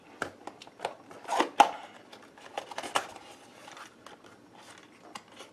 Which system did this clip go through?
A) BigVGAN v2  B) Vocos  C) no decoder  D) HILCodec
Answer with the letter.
C